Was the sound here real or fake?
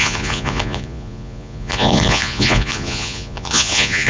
fake